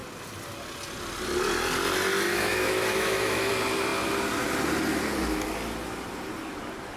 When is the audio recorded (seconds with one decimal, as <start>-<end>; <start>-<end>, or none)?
0.0-2.3; 3.5-7.0